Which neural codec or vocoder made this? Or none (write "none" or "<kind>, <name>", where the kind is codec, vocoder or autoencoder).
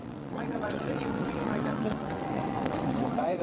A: vocoder, WaveNeXt